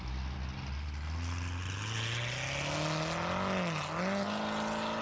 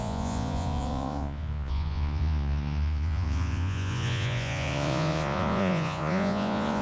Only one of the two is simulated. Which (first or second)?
second